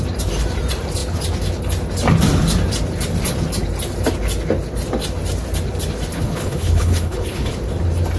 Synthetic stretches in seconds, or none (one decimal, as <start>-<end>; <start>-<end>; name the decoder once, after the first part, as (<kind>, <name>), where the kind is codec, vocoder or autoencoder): 6.1-7.5 (codec, HILCodec)